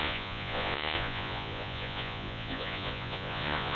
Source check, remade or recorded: remade